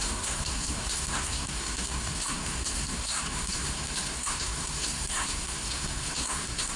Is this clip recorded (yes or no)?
no